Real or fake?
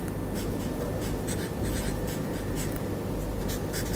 real